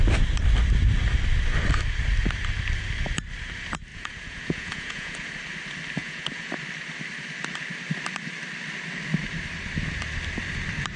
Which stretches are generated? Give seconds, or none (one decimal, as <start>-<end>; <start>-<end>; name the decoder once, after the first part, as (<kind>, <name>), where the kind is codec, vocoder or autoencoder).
3.9-5.3 (vocoder, Vocos); 6.0-6.5